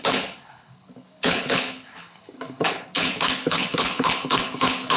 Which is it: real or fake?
fake